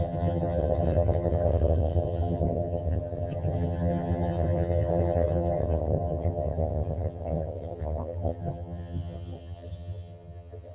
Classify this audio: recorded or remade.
remade